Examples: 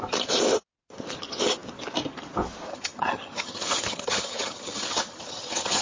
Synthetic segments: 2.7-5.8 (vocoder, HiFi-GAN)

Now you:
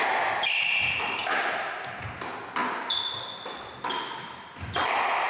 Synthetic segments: none

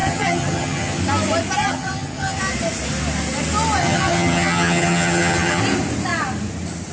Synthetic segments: 0.0-1.0 (vocoder, HiFi-GAN); 1.6-2.4; 3.8-5.6

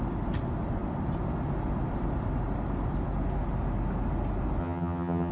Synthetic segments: 4.6-5.3 (vocoder, HiFi-GAN)

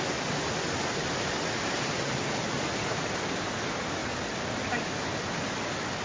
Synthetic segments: none

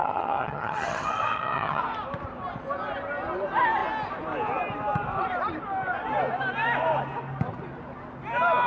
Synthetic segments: 0.0-1.8 (vocoder, HiFi-GAN)

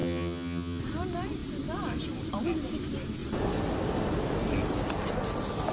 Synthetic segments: 0.0-0.8 (vocoder, HiFi-GAN)